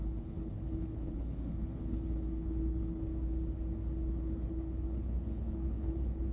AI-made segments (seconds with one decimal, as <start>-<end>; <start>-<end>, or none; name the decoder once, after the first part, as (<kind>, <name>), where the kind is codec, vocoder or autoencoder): 0.0-3.1 (codec, HILCodec); 4.1-6.3